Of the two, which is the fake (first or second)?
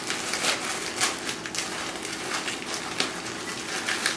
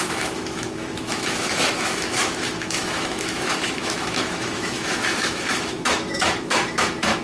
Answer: second